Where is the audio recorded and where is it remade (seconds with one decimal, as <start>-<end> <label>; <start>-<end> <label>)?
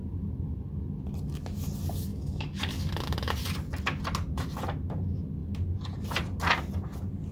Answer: 0.0-2.1 recorded; 2.1-3.3 remade; 3.3-7.3 recorded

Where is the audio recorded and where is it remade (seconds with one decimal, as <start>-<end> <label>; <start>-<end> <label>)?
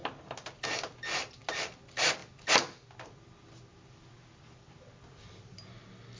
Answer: 0.0-6.2 recorded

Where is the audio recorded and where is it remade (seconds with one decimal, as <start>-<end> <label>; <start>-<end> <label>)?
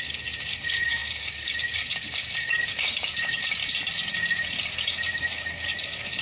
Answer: 0.0-3.6 remade; 3.6-4.9 recorded; 4.9-6.2 remade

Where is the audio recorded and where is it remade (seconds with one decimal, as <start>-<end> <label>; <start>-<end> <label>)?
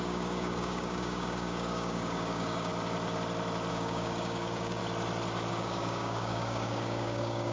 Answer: 0.0-2.7 remade; 2.7-3.7 recorded; 3.7-4.8 remade; 4.8-5.5 recorded; 5.5-7.5 remade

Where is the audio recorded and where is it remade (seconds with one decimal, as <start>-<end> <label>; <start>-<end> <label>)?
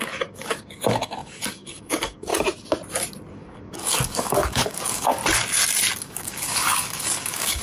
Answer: 0.0-2.3 remade; 2.3-3.3 recorded; 3.3-5.2 remade; 5.2-6.0 recorded; 6.0-7.6 remade